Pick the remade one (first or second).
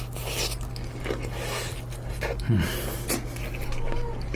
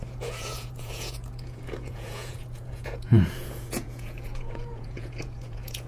second